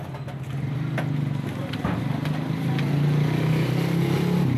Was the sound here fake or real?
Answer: real